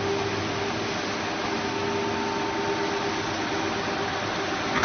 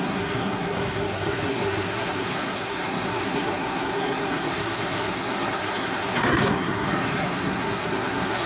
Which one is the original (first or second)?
first